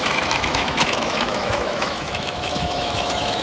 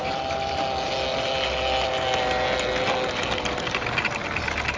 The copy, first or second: first